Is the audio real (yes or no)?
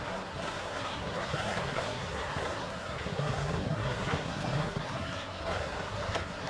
no